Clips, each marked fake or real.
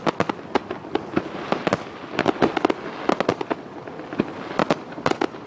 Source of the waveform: real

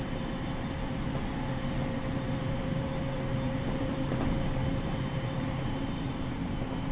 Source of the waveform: fake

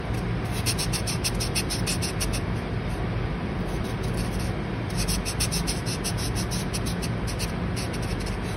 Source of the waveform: real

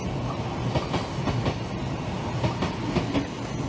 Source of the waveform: real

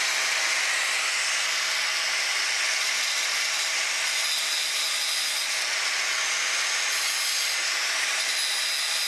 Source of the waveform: real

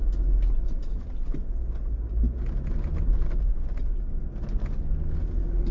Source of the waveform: real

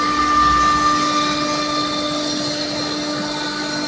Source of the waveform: real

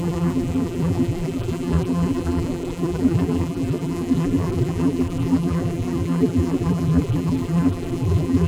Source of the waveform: fake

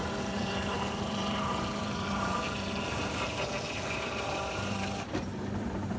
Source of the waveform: fake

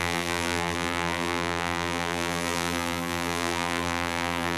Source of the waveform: fake